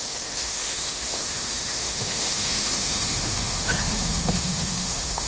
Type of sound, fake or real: fake